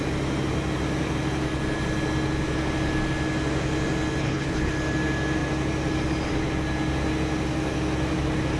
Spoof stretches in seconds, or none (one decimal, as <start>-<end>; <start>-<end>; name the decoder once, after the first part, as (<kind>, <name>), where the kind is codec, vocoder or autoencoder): 4.2-4.7 (codec, HILCodec)